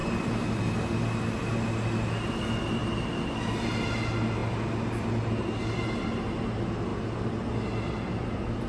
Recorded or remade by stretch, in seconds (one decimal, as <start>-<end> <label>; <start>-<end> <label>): 0.0-0.6 remade; 0.6-2.8 recorded; 2.8-3.4 remade; 3.4-8.7 recorded